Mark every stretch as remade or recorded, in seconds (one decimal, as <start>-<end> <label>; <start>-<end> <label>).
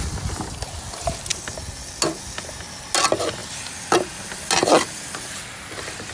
0.0-6.1 recorded